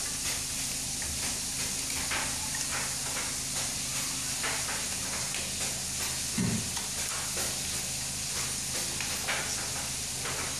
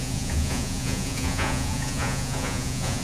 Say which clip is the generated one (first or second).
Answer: second